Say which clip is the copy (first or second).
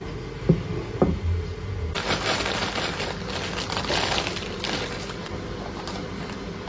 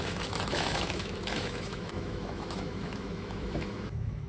second